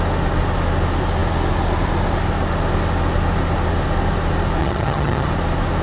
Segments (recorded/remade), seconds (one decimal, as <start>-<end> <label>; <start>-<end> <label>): 0.0-4.6 recorded; 4.6-5.3 remade; 5.3-5.8 recorded